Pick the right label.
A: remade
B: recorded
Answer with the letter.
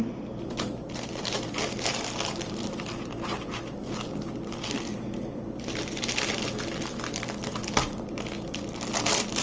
B